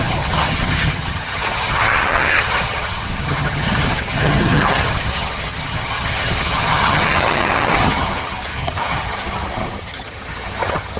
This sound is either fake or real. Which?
fake